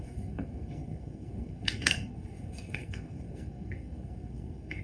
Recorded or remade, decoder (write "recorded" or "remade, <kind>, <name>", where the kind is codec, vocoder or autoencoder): remade, codec, SNAC